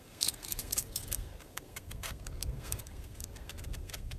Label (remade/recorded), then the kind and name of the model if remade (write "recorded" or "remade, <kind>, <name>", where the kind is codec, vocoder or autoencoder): remade, codec, SNAC